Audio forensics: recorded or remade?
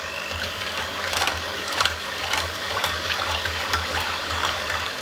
remade